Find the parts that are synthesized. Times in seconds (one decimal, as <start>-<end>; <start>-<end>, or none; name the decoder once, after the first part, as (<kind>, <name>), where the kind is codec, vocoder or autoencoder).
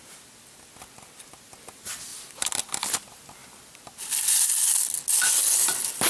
2.1-2.7 (vocoder, BigVGAN v2)